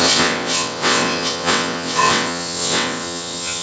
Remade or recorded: remade